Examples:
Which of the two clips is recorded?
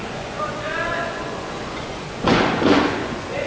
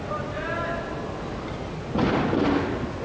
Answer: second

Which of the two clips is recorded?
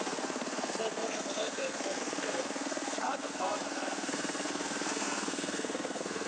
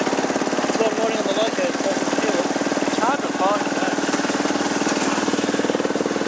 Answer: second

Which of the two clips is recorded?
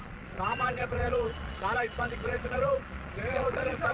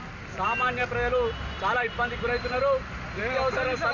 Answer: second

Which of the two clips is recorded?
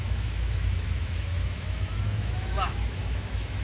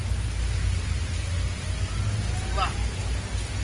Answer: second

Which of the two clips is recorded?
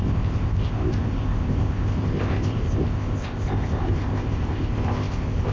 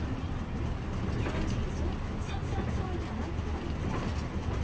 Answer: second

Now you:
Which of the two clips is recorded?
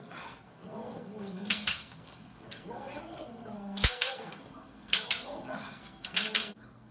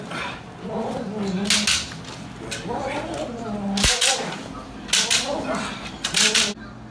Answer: second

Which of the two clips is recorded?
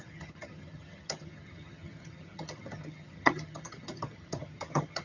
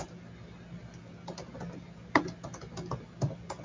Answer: second